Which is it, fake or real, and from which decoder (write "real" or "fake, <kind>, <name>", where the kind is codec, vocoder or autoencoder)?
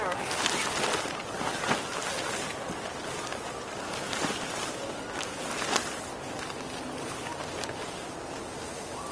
real